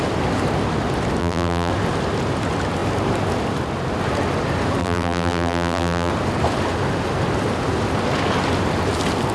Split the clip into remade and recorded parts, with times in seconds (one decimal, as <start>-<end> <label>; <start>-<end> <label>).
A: 0.0-1.2 recorded; 1.2-1.7 remade; 1.7-4.8 recorded; 4.8-6.1 remade; 6.1-9.3 recorded